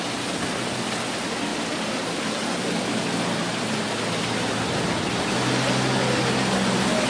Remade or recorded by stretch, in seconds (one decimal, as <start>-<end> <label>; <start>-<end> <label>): 0.0-7.1 recorded